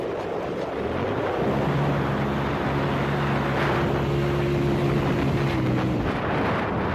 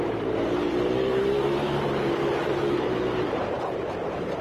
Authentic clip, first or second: first